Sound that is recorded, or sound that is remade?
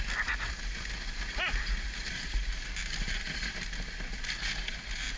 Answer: recorded